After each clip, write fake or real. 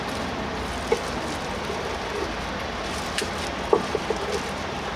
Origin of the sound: real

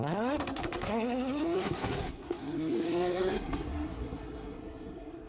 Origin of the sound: fake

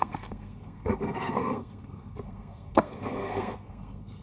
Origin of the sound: fake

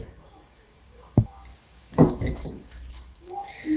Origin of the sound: fake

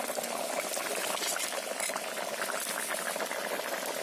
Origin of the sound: real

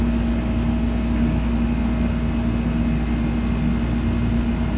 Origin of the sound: real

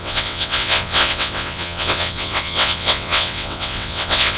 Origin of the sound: fake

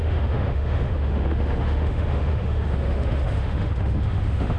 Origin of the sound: fake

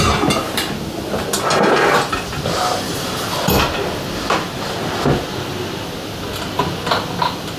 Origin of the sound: real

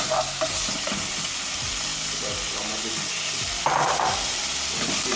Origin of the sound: real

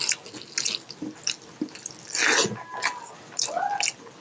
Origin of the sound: real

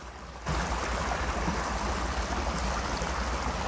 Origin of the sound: real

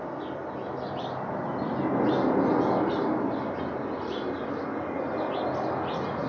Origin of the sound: real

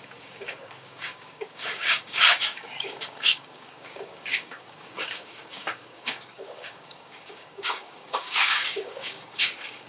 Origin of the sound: fake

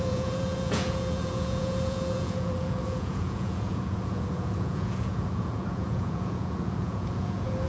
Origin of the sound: fake